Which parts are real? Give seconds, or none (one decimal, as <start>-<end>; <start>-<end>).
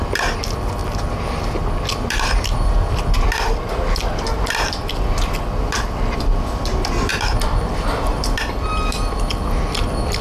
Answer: 0.8-1.9